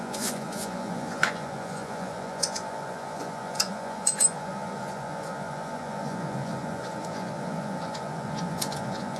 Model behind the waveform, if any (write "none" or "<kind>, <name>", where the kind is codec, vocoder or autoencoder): vocoder, Vocos